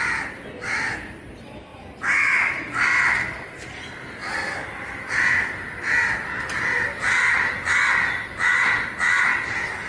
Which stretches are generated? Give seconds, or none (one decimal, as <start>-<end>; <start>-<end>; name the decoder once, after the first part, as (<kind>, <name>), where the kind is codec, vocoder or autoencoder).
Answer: none